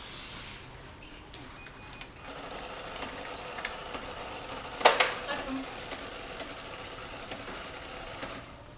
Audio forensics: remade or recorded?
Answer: recorded